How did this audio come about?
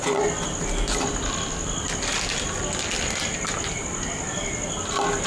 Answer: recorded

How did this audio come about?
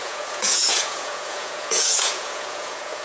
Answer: remade